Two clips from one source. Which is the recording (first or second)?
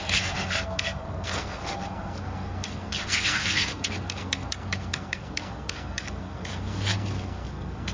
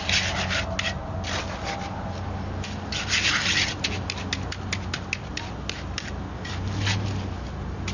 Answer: second